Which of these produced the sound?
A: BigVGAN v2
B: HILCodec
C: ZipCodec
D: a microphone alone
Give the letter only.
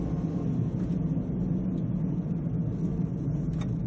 D